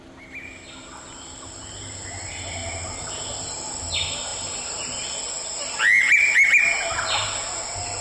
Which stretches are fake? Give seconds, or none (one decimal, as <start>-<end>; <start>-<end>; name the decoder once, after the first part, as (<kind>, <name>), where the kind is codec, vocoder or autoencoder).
none